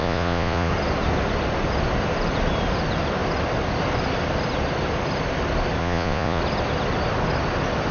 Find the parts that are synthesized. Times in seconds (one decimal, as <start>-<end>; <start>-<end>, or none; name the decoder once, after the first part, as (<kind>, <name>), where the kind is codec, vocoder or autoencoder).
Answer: 0.0-0.7 (vocoder, Vocos); 5.8-6.4